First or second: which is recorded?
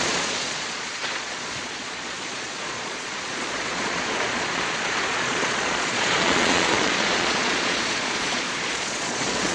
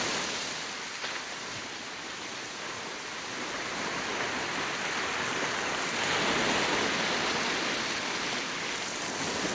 second